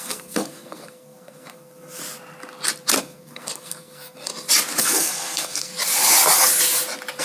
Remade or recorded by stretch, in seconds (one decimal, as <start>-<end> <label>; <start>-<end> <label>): 0.0-2.0 remade; 2.0-3.0 recorded; 3.0-4.3 remade; 4.3-4.8 recorded; 4.8-5.7 remade; 5.7-7.2 recorded